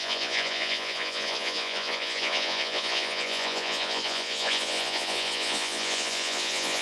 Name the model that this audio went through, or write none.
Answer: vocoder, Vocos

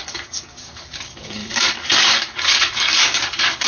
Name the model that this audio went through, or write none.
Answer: codec, DAC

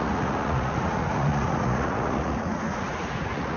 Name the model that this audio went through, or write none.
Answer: vocoder, Vocos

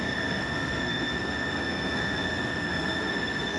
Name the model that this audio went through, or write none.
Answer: codec, SNAC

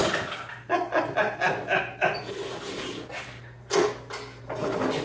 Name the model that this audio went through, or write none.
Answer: none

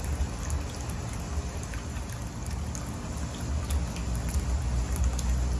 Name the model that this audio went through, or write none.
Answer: none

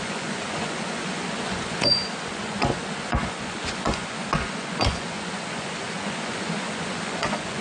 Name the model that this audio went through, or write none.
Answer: vocoder, Vocos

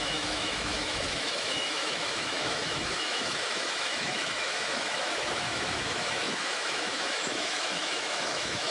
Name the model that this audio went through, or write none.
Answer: autoencoder, DAC-VAE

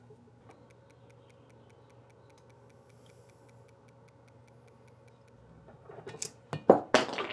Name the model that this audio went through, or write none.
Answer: none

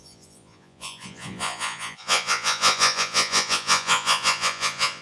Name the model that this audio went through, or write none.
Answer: vocoder, Vocos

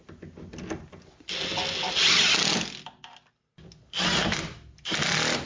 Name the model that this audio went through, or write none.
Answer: none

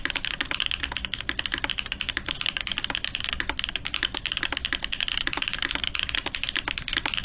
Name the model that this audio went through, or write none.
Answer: none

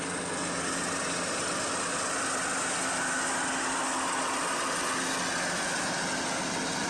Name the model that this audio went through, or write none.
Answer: none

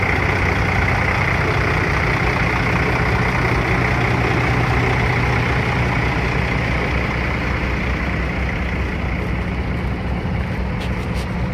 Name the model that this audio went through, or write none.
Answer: none